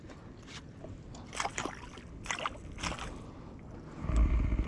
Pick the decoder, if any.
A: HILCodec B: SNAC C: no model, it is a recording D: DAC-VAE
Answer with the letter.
C